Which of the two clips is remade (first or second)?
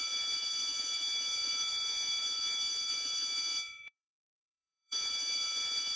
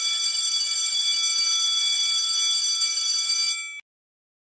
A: first